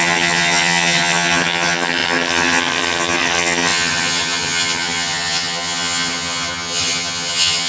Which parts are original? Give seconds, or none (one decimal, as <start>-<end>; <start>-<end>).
none